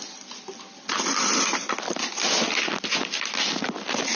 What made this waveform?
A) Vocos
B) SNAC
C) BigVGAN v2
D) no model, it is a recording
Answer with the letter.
D